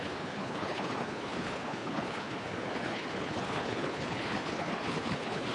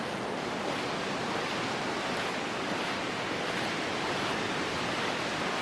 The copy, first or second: first